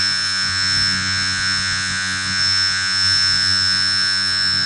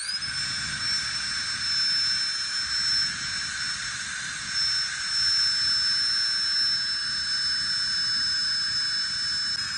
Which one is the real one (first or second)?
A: second